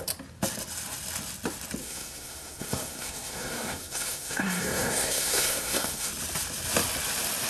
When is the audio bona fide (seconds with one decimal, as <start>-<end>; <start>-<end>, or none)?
0.0-1.8; 6.1-7.5